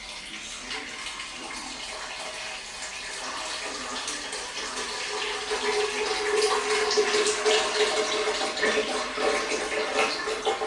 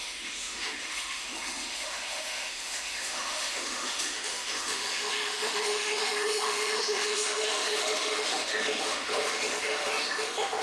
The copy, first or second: second